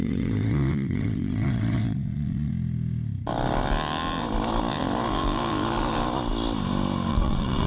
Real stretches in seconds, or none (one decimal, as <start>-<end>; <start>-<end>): 2.5-7.1